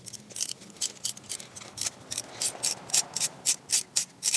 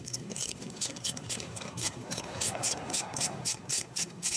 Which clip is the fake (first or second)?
second